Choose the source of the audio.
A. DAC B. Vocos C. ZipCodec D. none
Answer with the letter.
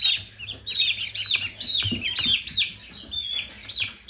D